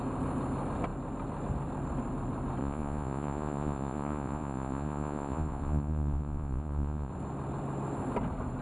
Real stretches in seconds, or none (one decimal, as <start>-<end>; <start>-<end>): 0.0-2.6; 7.1-8.6